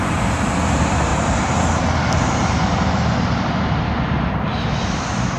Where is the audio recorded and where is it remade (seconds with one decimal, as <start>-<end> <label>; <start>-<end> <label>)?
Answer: 0.0-1.1 remade; 1.1-4.3 recorded; 4.3-5.4 remade